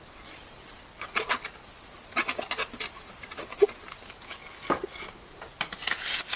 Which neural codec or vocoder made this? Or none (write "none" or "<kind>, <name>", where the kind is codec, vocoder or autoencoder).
none